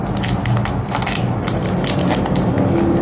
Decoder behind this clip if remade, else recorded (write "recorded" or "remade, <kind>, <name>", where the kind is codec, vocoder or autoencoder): recorded